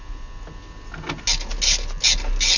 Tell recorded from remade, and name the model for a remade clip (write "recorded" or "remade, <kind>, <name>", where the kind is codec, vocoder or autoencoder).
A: recorded